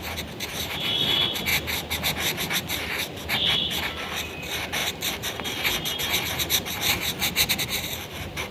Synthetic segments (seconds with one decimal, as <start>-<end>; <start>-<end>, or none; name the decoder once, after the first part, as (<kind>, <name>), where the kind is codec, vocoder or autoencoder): none